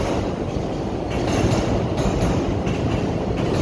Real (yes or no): yes